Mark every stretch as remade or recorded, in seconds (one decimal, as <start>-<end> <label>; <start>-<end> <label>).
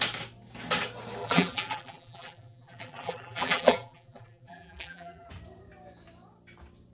0.0-1.2 recorded; 1.2-5.3 remade; 5.3-6.9 recorded